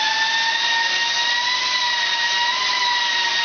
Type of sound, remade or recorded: recorded